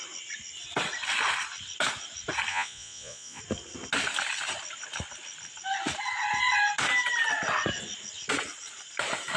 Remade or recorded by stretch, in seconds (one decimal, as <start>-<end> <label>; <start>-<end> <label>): 0.0-2.5 recorded; 2.5-3.4 remade; 3.4-9.4 recorded